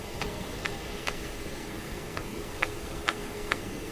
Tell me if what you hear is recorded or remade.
remade